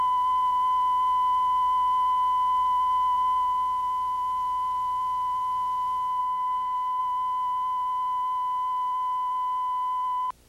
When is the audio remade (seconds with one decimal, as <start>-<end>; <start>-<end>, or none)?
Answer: 6.2-7.0